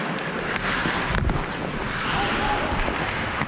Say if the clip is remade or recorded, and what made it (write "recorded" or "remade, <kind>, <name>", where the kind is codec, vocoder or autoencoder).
recorded